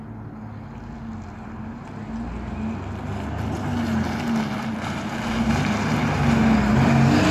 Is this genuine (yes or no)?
yes